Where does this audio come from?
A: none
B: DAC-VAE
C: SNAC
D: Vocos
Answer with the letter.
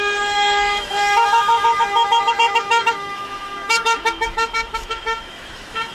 B